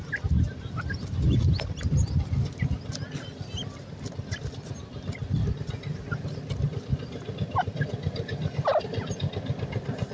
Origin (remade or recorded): recorded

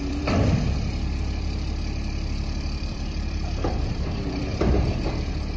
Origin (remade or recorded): remade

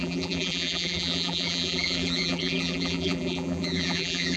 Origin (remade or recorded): remade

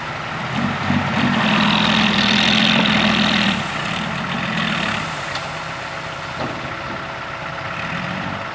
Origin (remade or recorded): recorded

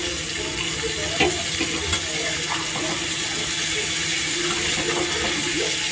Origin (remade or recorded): recorded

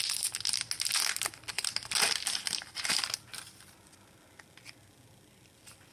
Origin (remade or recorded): recorded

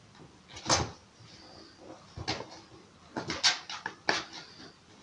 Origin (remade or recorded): recorded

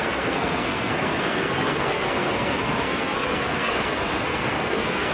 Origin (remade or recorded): remade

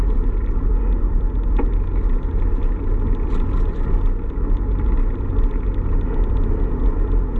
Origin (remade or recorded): recorded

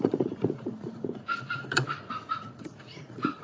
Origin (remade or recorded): remade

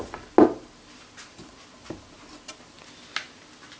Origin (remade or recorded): recorded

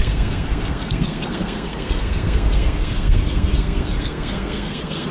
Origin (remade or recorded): remade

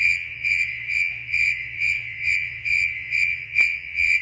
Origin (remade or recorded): remade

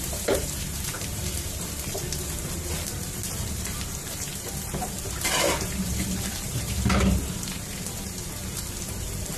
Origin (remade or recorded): remade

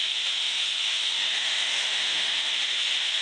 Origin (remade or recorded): remade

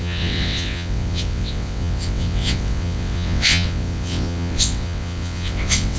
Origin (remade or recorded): remade